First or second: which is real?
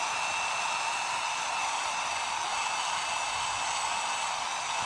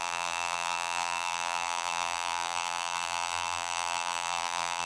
first